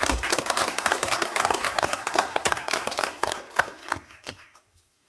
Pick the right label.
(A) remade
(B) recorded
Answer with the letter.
A